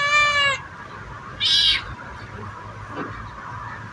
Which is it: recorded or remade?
recorded